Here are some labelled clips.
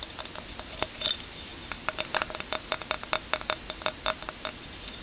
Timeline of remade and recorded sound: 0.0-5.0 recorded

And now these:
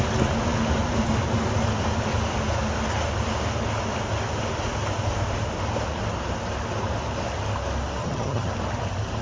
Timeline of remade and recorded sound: 0.0-8.0 recorded; 8.0-8.5 remade; 8.5-9.2 recorded

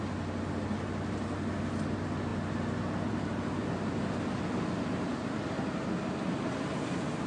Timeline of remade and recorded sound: 0.0-7.3 recorded

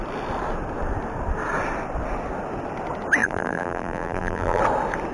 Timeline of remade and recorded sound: 0.0-3.2 recorded; 3.2-4.6 remade; 4.6-5.1 recorded

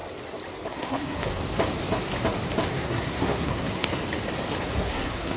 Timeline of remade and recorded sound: 0.0-0.7 recorded; 0.7-1.4 remade; 1.4-2.7 recorded; 2.7-4.0 remade; 4.0-4.6 recorded; 4.6-5.4 remade

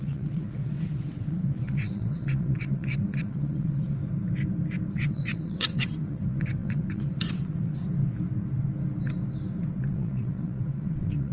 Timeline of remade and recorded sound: 0.0-4.0 remade; 4.0-4.9 recorded; 4.9-7.8 remade; 7.8-9.8 recorded; 9.8-11.3 remade